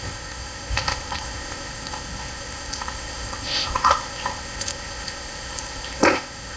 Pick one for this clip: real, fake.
fake